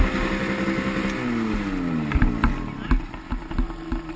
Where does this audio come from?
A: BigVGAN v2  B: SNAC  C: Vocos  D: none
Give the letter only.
D